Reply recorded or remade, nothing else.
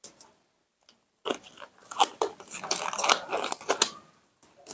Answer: recorded